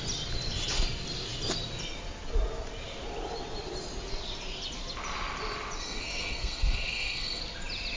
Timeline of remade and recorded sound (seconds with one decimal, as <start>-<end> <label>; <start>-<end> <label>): 0.0-5.8 recorded; 5.8-7.4 remade; 7.4-8.0 recorded